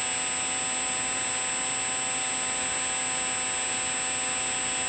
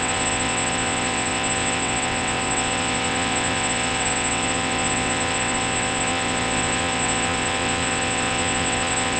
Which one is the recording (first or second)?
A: first